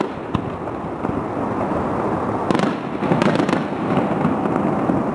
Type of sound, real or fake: real